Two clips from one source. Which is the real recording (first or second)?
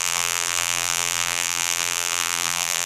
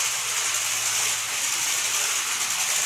second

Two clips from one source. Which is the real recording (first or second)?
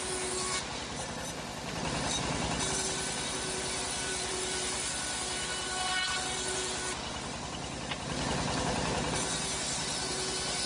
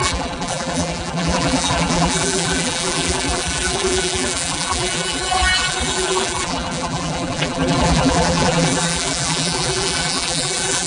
first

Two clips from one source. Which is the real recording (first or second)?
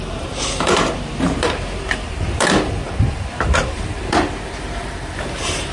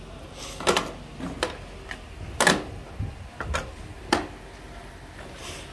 second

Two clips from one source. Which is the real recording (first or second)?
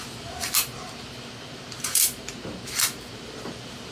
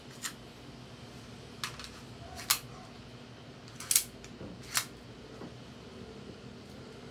second